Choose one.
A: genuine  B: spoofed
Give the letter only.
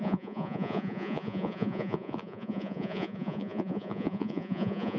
B